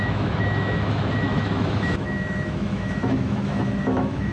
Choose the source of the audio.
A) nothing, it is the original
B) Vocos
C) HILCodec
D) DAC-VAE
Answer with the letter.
D